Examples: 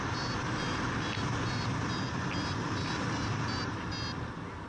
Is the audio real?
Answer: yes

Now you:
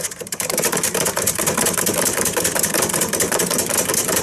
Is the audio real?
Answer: no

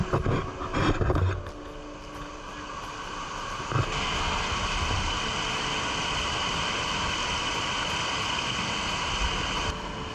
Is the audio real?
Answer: yes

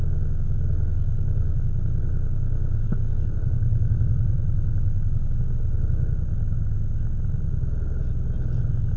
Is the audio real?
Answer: yes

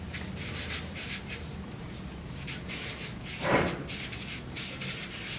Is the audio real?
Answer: no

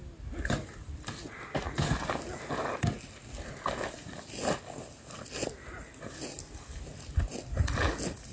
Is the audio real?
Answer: yes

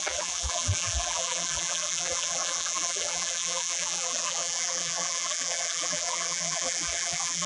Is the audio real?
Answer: no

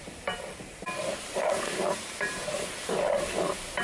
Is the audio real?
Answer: no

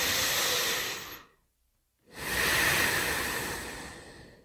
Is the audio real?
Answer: yes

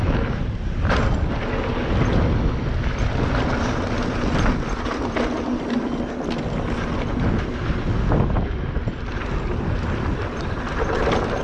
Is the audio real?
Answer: yes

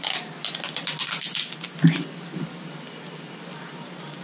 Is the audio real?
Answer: yes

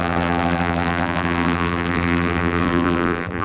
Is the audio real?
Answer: no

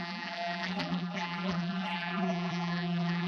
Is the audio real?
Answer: no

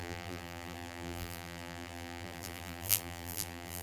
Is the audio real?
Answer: no